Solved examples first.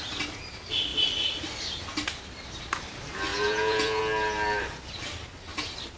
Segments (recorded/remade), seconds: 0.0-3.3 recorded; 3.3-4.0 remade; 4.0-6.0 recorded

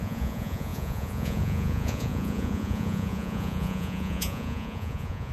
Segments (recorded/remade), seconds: 0.0-5.3 remade